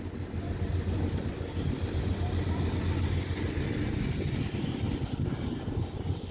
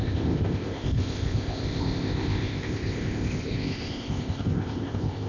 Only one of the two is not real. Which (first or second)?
second